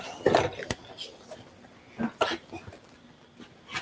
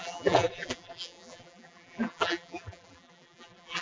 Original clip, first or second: first